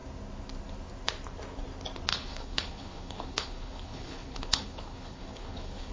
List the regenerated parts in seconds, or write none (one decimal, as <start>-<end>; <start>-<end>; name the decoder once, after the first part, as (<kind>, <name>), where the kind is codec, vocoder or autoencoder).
2.1-5.9 (codec, HILCodec)

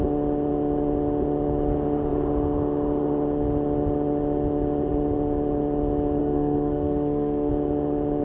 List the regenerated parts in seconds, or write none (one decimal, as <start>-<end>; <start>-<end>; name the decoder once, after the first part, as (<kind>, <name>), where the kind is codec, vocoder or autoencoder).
6.2-7.5 (codec, SNAC)

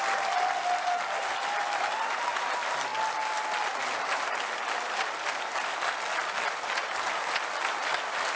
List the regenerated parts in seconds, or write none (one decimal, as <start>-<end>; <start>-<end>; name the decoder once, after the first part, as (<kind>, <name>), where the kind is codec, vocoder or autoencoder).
none

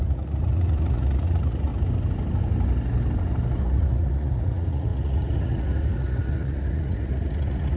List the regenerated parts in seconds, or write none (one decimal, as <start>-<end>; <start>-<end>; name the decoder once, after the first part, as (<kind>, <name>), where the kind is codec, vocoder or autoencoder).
0.0-1.7 (vocoder, Vocos); 3.6-7.8